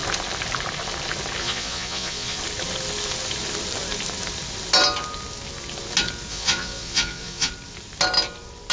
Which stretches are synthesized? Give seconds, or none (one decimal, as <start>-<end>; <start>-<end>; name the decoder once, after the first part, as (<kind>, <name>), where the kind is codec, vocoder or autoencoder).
1.4-2.4 (vocoder, Vocos); 6.3-7.5